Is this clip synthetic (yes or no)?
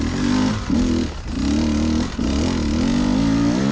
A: no